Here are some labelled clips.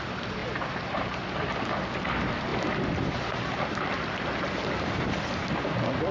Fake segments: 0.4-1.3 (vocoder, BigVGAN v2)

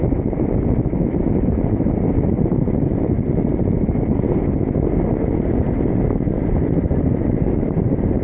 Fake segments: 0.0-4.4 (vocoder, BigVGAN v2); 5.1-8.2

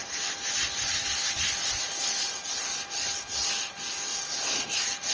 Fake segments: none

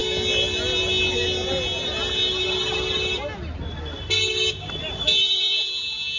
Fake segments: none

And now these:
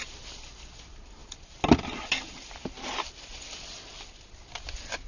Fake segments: none

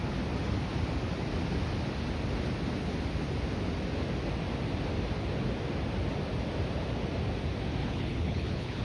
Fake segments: 7.8-8.8 (codec, HILCodec)

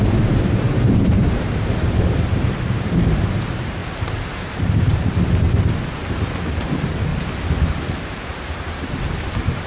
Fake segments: 0.0-3.8 (vocoder, BigVGAN v2); 4.6-6.0; 6.5-7.1; 8.0-9.7

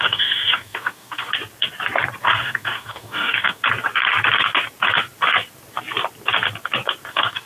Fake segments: 0.0-1.3 (codec, DAC); 2.2-3.6; 7.1-7.5